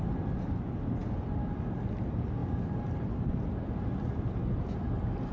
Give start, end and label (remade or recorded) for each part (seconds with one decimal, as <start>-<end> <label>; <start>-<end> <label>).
0.0-5.3 recorded